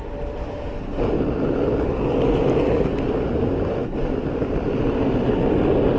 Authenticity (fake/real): real